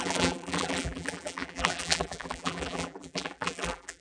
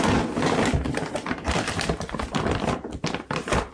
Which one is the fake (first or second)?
first